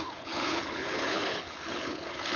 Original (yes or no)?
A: no